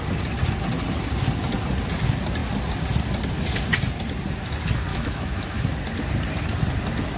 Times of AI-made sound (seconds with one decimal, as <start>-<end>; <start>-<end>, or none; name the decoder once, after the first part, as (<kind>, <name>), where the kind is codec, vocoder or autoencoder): 4.9-5.6 (autoencoder, DAC-VAE)